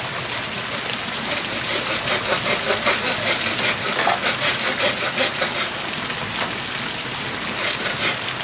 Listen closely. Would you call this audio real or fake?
real